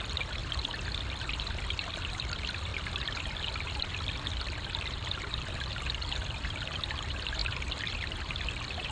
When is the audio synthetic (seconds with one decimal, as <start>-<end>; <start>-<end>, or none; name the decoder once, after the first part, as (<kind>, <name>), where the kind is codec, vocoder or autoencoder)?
0.0-0.4 (vocoder, BigVGAN v2); 1.5-2.7; 3.7-8.9